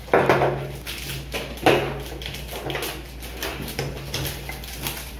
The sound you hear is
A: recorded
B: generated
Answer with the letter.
A